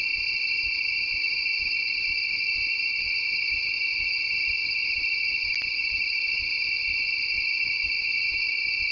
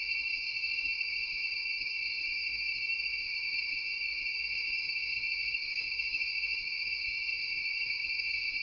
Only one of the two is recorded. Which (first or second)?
first